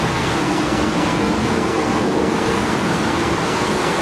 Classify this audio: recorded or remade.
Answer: remade